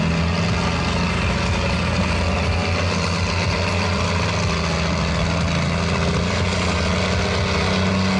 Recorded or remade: recorded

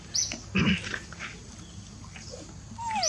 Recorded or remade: recorded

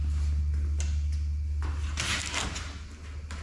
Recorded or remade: recorded